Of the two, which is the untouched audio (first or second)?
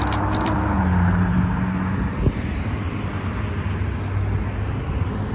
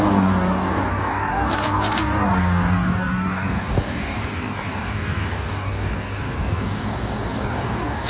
first